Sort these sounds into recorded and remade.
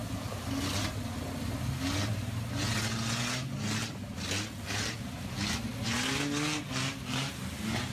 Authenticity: recorded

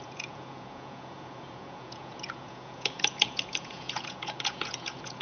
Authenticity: remade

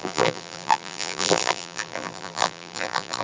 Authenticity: remade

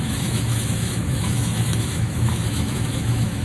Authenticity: remade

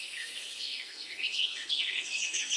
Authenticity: remade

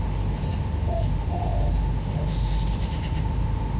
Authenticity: remade